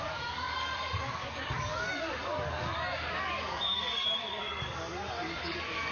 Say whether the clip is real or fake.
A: fake